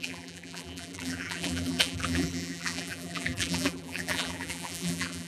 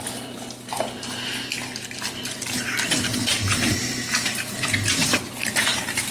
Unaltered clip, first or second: second